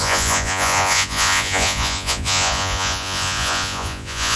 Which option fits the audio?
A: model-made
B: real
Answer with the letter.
A